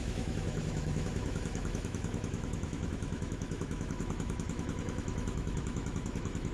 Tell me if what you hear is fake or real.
fake